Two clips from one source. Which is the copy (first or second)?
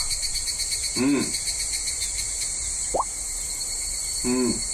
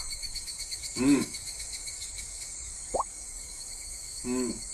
second